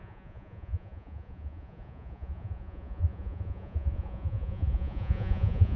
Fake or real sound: fake